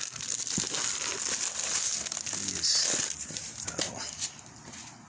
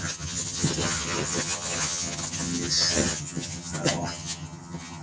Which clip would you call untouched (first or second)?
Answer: first